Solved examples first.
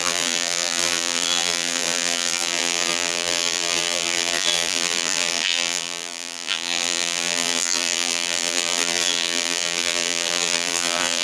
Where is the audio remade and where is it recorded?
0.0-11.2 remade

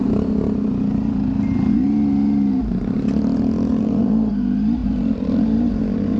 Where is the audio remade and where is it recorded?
0.0-0.8 remade; 0.8-3.7 recorded; 3.7-4.3 remade; 4.3-4.8 recorded; 4.8-5.8 remade; 5.8-6.2 recorded

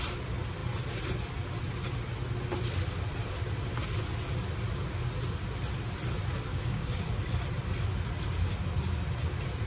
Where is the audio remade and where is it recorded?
0.0-6.5 recorded; 6.5-7.0 remade; 7.0-9.7 recorded

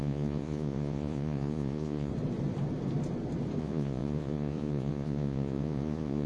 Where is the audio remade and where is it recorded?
0.0-2.1 remade; 2.1-3.6 recorded; 3.6-6.3 remade

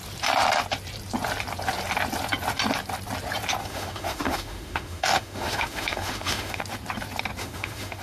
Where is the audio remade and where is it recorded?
0.0-3.6 recorded; 3.6-6.6 remade; 6.6-7.4 recorded; 7.4-8.0 remade